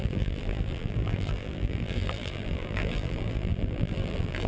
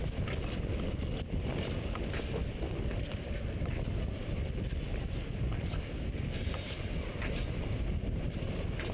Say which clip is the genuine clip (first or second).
second